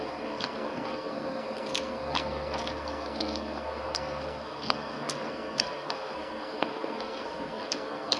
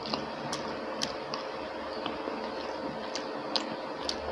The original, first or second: second